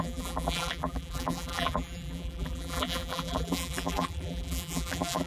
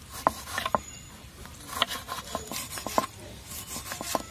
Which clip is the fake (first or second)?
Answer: first